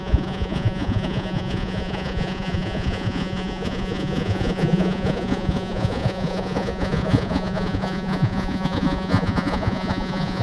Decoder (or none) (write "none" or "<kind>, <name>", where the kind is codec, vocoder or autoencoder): vocoder, Vocos